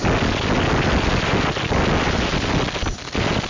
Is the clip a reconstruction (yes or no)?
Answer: no